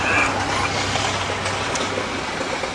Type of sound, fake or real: real